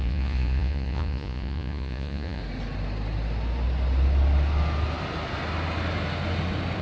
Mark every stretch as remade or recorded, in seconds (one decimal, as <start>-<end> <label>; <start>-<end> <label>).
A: 0.0-2.4 remade; 2.4-6.8 recorded